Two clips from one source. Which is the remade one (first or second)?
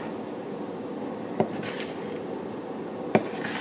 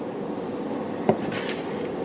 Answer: second